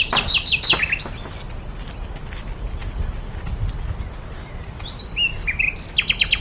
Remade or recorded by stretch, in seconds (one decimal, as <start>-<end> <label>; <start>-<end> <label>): 0.0-6.4 recorded